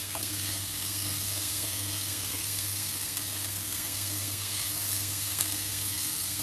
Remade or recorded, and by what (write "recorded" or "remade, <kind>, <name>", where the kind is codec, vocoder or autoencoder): remade, codec, SNAC